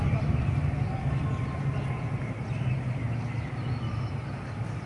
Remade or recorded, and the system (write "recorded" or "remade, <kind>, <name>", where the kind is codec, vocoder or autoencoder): recorded